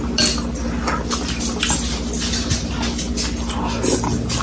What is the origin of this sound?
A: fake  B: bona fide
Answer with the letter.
B